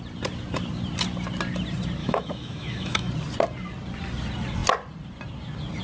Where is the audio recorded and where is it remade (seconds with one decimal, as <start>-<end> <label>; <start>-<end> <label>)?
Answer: 0.0-2.0 recorded; 2.0-3.1 remade; 3.1-5.8 recorded